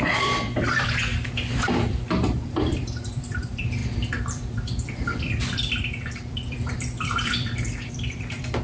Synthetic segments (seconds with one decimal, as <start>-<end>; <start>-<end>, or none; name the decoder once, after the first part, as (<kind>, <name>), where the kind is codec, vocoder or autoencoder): 0.0-1.1 (vocoder, BigVGAN v2); 1.7-8.6